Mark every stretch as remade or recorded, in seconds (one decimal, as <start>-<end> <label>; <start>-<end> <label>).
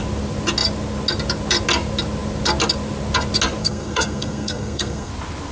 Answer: 0.0-3.6 recorded; 3.6-5.1 remade; 5.1-5.5 recorded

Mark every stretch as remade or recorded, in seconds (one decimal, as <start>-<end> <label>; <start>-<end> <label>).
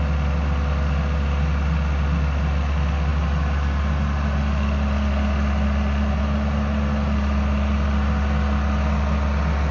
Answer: 0.0-9.7 recorded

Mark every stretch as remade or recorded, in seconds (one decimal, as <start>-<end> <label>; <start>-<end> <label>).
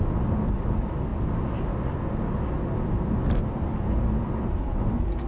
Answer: 0.0-5.3 recorded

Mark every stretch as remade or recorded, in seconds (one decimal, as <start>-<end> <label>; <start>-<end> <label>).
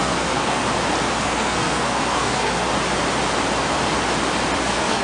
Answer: 0.0-0.6 remade; 0.6-1.2 recorded; 1.2-2.7 remade; 2.7-4.6 recorded; 4.6-5.0 remade